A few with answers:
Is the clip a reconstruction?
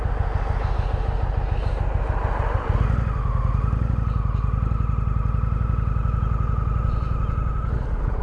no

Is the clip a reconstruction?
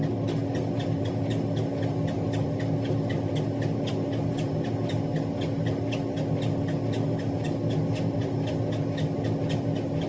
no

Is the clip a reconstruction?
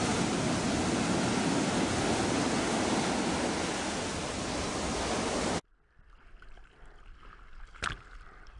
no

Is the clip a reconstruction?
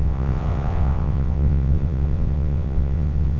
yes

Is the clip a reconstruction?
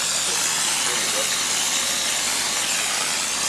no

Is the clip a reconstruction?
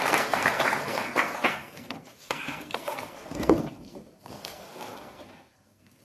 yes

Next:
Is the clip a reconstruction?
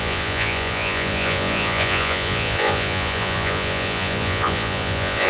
yes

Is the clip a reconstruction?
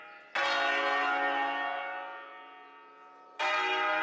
no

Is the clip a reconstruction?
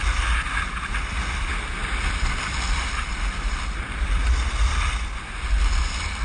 no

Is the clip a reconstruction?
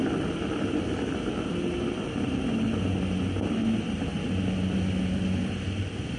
no